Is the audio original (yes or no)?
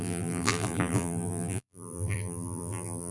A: no